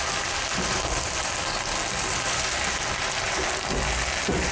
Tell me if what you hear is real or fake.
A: real